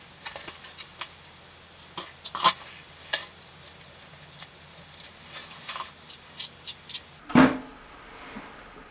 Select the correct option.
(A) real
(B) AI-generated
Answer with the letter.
A